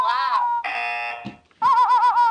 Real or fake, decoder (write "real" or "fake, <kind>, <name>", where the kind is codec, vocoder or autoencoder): real